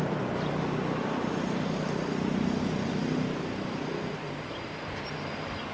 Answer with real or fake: fake